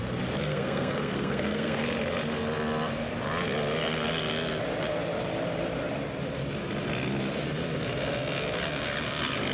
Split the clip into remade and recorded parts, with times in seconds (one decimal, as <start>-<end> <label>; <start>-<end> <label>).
0.0-0.4 recorded; 0.4-1.8 remade; 1.8-9.5 recorded